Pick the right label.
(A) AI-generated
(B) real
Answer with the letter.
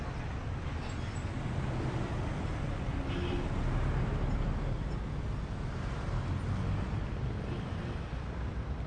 B